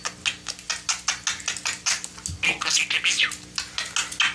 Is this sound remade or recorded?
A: recorded